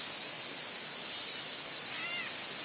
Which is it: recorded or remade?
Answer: recorded